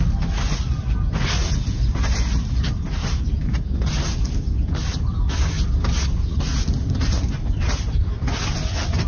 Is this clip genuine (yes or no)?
yes